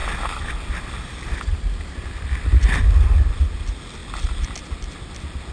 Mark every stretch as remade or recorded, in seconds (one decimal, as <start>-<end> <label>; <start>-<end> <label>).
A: 0.0-5.5 recorded